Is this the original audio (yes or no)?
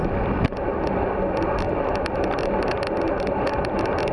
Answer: yes